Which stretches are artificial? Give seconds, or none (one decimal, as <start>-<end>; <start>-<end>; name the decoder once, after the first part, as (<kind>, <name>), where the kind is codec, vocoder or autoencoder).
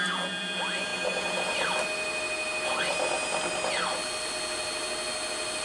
none